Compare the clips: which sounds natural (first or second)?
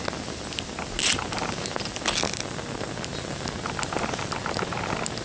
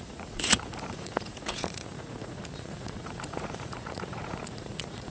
first